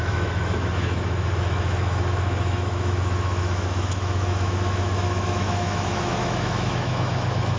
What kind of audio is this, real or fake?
fake